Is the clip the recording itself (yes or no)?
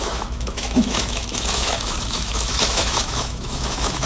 no